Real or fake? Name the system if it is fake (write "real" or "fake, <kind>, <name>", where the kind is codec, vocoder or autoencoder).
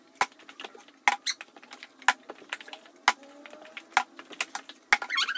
real